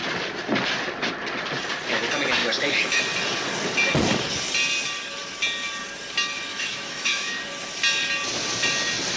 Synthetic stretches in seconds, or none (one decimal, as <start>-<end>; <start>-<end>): 2.4-3.0; 6.5-7.4